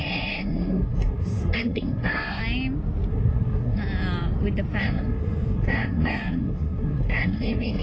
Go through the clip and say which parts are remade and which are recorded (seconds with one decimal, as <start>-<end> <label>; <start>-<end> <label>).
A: 0.0-2.4 remade; 2.4-3.1 recorded; 3.1-3.8 remade; 3.8-4.8 recorded; 4.8-7.8 remade

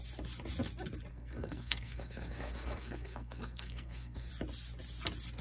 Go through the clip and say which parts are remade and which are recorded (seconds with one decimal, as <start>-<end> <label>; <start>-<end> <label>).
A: 0.0-1.1 recorded; 1.1-4.3 remade; 4.3-5.4 recorded

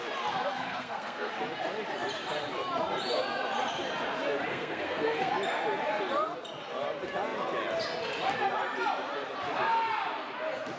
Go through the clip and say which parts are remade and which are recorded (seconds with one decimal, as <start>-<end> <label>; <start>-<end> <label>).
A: 0.0-0.5 recorded; 0.5-1.3 remade; 1.3-4.5 recorded; 4.5-5.3 remade; 5.3-10.8 recorded

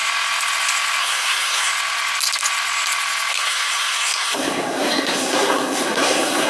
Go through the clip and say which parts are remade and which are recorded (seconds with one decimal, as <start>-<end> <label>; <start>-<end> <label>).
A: 0.0-1.0 recorded; 1.0-1.7 remade; 1.7-3.3 recorded; 3.3-6.5 remade

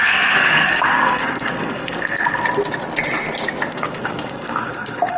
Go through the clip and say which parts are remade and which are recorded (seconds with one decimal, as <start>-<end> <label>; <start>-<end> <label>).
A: 0.0-2.4 remade; 2.4-3.7 recorded; 3.7-5.2 remade

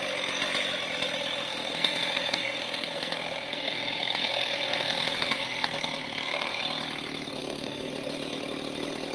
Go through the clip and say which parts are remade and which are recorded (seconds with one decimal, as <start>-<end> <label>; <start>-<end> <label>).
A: 0.0-1.4 recorded; 1.4-6.6 remade; 6.6-7.4 recorded; 7.4-7.9 remade; 7.9-9.1 recorded